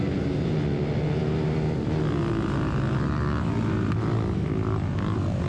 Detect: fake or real real